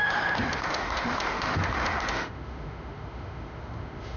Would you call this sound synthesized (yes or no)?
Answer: yes